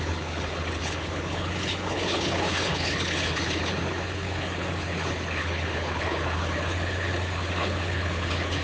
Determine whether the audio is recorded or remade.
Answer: remade